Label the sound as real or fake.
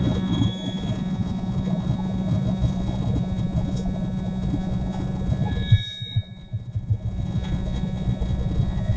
fake